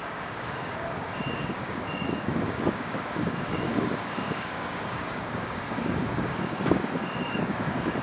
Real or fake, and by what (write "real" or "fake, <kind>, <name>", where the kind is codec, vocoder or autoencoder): fake, codec, DAC